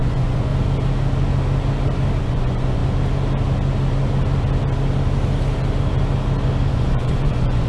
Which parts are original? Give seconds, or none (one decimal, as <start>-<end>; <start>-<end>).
0.5-2.2; 2.8-6.7